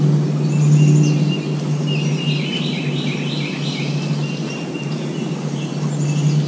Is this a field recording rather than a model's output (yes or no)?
yes